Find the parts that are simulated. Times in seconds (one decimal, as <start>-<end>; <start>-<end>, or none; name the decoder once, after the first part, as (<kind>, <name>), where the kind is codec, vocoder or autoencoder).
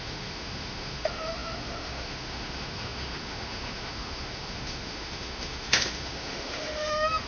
0.0-7.3 (autoencoder, DAC-VAE)